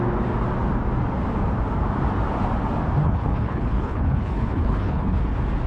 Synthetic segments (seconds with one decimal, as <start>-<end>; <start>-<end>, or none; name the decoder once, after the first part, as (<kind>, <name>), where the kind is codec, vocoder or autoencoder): 3.0-5.2 (codec, HILCodec)